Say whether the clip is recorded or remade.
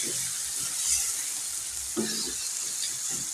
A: recorded